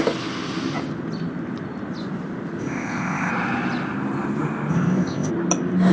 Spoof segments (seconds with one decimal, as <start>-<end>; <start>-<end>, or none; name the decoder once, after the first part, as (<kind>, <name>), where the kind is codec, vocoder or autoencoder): 2.6-3.3 (codec, ZipCodec); 4.7-5.3